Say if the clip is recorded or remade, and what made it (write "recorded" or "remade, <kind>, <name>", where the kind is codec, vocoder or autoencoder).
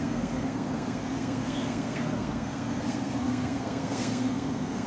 remade, codec, SNAC